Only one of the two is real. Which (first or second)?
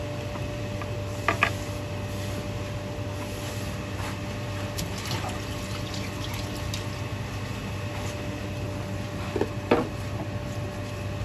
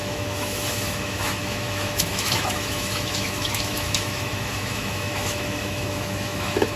first